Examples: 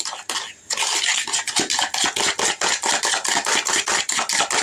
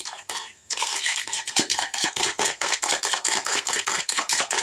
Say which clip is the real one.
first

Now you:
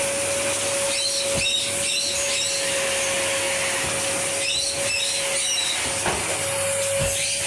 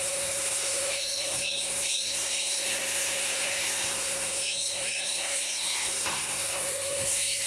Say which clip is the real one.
first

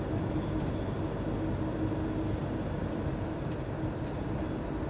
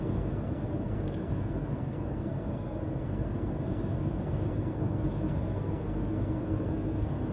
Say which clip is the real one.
first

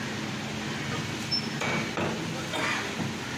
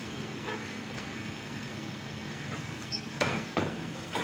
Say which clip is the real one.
first